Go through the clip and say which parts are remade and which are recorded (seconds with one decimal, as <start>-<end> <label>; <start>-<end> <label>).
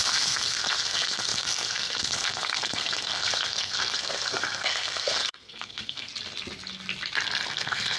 0.0-6.1 remade; 6.1-7.5 recorded; 7.5-8.0 remade